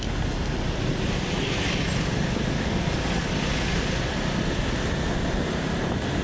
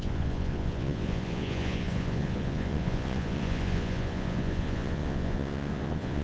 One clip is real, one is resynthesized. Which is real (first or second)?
first